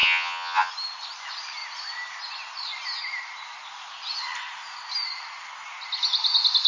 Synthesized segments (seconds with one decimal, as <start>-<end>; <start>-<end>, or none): 0.0-0.7